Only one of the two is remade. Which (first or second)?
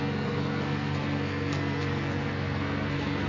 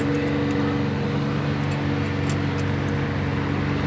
first